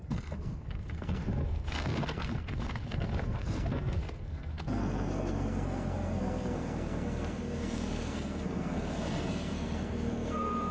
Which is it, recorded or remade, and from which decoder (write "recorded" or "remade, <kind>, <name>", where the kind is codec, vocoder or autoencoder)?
remade, codec, SNAC